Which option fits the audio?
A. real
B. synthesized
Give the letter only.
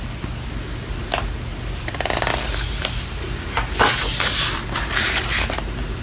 A